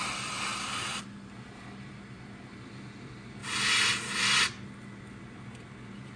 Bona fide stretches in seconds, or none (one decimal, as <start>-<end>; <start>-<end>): 0.0-0.5; 2.6-6.2